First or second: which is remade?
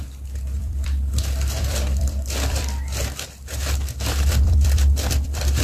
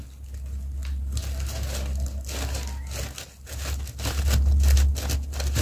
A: first